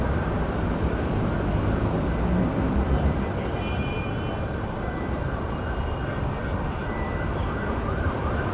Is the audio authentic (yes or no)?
no